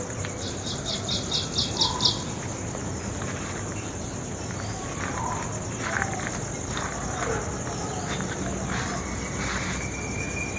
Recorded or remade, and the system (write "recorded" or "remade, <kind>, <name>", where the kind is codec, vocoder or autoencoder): recorded